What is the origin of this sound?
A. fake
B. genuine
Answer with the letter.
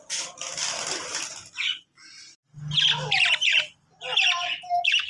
B